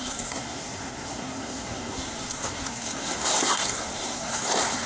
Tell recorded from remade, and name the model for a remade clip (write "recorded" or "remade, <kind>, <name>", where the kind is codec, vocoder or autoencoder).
remade, codec, SNAC